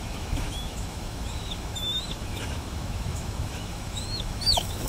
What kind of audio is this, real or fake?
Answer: fake